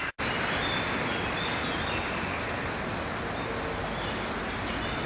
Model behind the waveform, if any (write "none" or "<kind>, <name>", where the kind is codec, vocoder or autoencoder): none